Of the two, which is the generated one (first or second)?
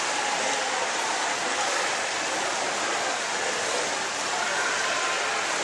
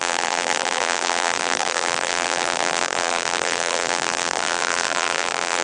second